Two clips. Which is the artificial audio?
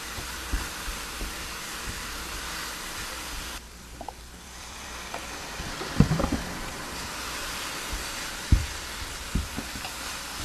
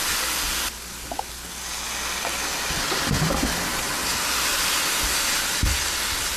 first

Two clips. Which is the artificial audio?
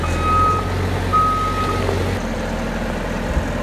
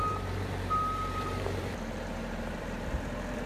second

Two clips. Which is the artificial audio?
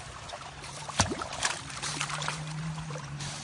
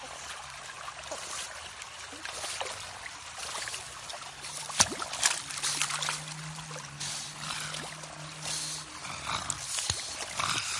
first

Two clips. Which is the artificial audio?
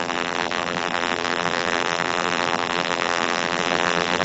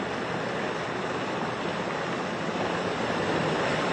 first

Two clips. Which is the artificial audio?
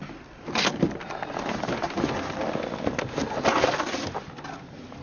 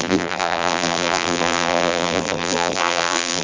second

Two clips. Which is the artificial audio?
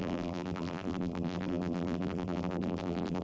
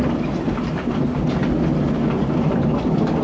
first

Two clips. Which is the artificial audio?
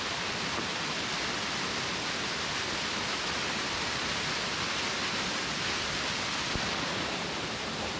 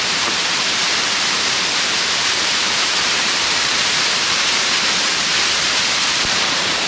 second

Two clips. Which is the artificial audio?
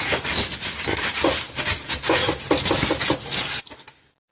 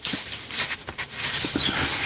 first